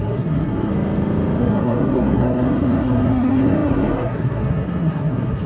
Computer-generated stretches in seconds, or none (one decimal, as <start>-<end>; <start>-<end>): 0.0-0.7; 1.4-5.5